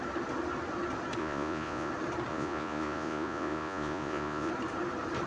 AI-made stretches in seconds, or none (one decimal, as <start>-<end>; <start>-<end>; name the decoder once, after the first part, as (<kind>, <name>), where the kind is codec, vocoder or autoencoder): 1.2-1.9 (vocoder, Vocos); 2.3-4.5